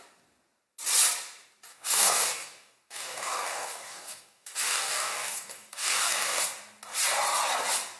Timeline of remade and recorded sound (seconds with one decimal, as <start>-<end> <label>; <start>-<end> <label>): 0.0-1.7 recorded; 1.7-6.4 remade; 6.4-8.0 recorded